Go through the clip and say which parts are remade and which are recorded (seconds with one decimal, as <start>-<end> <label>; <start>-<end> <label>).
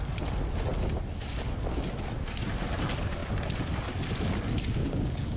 0.0-4.8 recorded; 4.8-5.4 remade